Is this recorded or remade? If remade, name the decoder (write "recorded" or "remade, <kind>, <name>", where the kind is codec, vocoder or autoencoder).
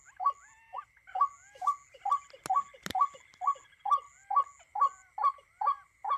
recorded